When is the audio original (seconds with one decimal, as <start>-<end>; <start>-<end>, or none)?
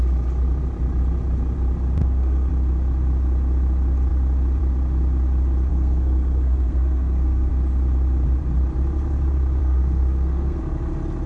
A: 0.0-2.0; 2.5-5.7; 7.5-9.6; 10.6-11.3